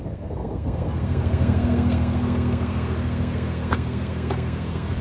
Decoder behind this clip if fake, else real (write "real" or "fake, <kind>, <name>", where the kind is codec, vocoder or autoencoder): fake, codec, SNAC